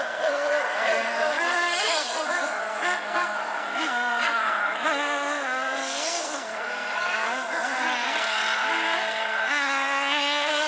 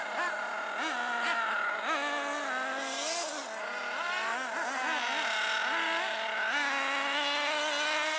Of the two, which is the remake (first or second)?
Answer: first